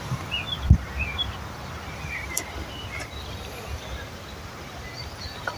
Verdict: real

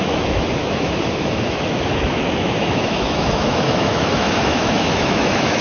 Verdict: fake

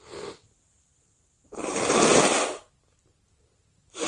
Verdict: real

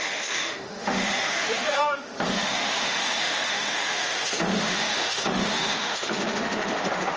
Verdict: fake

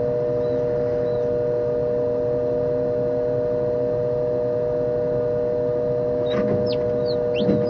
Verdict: real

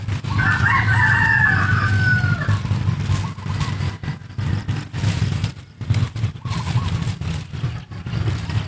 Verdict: real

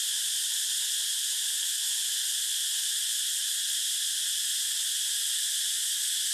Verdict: real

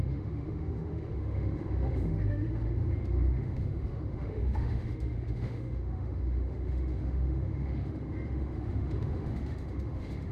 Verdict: fake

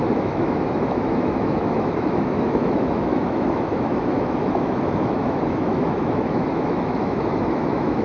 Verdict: fake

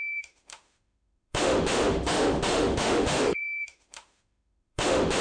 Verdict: fake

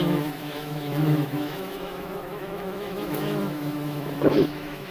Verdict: fake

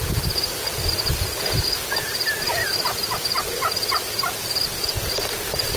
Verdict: real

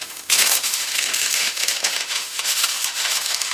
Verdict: fake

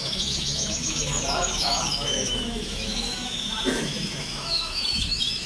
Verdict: fake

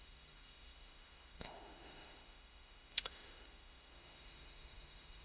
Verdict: fake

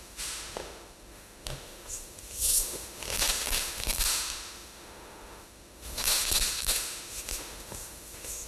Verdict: fake